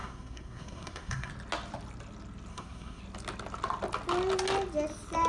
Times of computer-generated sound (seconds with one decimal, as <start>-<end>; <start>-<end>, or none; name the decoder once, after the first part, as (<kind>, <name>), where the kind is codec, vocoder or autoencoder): 0.0-1.3 (codec, SNAC); 2.5-3.0